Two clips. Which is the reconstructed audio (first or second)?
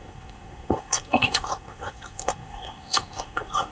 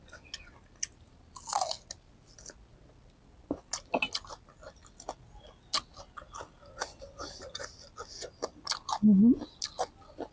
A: first